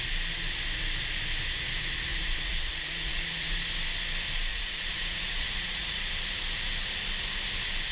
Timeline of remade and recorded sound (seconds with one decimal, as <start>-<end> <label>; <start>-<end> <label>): 0.0-2.1 recorded; 2.1-3.6 remade; 3.6-4.5 recorded; 4.5-6.1 remade; 6.1-7.9 recorded